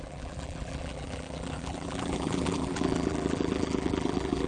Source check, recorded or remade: remade